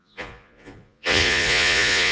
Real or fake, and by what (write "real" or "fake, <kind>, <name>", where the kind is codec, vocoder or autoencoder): fake, vocoder, Vocos